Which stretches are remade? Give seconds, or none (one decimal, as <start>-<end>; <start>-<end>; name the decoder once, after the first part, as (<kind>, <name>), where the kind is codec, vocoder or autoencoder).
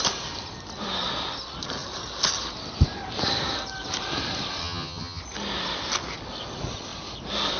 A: 4.6-5.2 (vocoder, HiFi-GAN)